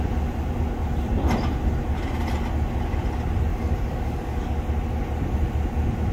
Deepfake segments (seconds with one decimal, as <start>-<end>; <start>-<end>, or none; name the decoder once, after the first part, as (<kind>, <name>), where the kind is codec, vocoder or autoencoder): 3.5-4.6 (codec, DAC)